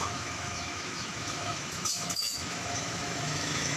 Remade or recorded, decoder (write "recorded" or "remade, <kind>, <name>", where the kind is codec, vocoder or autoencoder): remade, autoencoder, DAC-VAE